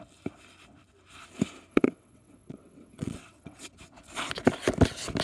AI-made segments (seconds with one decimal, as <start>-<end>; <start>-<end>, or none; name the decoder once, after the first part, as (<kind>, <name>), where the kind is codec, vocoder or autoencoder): 1.7-3.6 (vocoder, WaveNeXt)